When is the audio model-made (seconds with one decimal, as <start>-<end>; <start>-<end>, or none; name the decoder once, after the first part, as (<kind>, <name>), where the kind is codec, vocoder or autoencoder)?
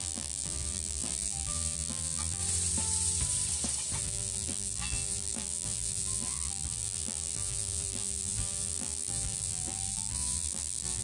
0.0-2.4 (vocoder, BigVGAN v2); 4.0-11.0